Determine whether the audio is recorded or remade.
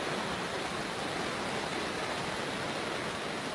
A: recorded